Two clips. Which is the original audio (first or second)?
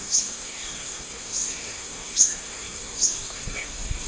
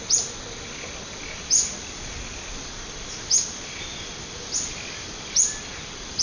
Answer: second